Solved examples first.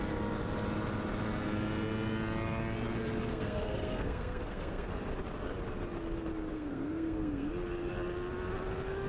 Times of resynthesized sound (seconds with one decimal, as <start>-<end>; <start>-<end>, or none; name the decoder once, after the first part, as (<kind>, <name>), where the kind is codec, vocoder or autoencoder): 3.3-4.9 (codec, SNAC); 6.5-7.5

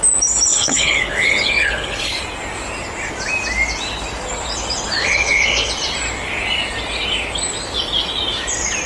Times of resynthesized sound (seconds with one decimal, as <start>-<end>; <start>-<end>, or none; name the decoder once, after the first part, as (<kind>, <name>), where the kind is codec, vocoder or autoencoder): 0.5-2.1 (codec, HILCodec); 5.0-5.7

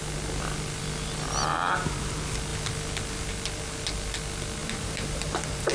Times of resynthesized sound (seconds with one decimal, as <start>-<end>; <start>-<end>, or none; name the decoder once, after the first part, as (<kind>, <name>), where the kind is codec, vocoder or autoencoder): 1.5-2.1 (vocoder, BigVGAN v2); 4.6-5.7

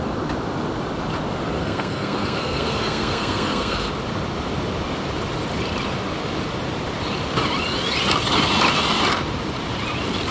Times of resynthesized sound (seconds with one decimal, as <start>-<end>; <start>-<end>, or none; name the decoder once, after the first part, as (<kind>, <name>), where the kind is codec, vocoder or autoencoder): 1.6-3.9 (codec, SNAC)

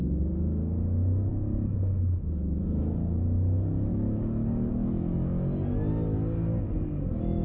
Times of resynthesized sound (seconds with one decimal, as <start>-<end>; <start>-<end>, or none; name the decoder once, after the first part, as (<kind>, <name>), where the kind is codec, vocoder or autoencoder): 3.9-4.7 (autoencoder, DAC-VAE)

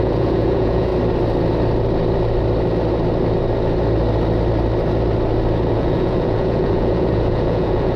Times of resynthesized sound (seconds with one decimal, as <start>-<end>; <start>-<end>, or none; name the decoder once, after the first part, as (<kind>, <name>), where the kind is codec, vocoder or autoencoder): 0.0-0.9 (vocoder, Vocos); 5.7-8.0